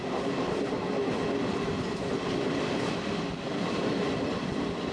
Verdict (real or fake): real